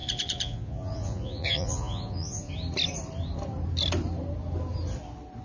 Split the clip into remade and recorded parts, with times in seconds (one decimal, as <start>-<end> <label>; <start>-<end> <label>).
0.0-2.5 remade; 2.5-5.4 recorded